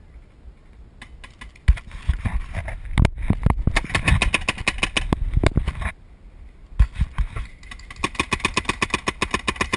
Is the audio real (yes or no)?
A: yes